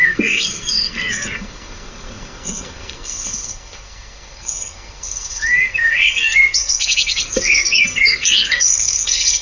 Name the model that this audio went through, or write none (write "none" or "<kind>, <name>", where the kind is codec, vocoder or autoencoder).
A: codec, SNAC